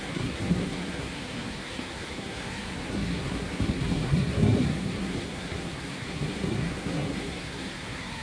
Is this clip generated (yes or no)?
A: yes